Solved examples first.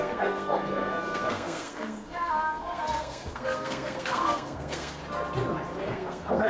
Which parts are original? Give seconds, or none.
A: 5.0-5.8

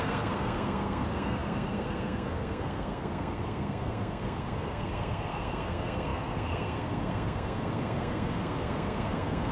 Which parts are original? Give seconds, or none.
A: none